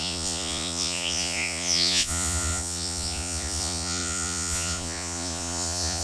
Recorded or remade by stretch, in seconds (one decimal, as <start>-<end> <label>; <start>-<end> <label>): 0.0-6.0 remade